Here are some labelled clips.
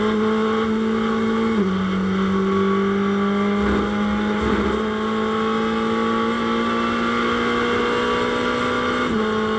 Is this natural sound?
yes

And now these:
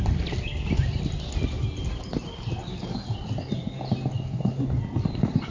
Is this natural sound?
yes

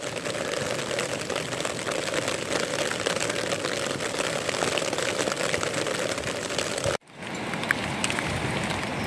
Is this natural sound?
yes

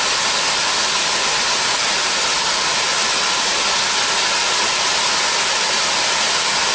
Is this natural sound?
yes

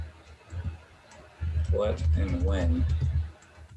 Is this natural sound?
yes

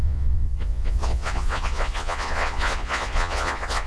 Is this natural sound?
no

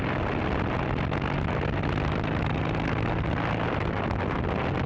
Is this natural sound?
yes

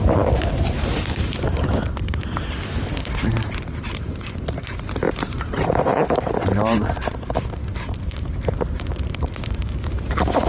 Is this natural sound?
no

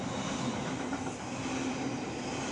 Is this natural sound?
yes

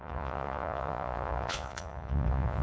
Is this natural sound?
no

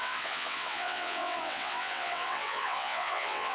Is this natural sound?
no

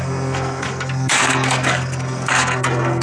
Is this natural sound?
no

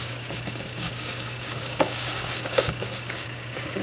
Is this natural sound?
no